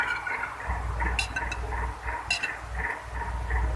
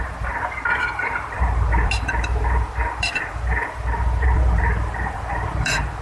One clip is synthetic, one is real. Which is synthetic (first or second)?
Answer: second